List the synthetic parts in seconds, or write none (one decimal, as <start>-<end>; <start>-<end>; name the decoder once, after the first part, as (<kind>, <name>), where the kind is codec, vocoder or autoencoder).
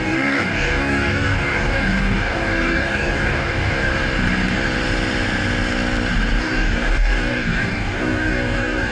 0.0-3.9 (codec, DAC); 6.4-8.9